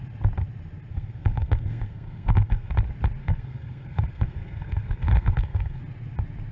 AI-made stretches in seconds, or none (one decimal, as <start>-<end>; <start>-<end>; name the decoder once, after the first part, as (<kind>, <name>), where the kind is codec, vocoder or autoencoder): 0.9-2.7 (codec, SNAC); 3.2-5.8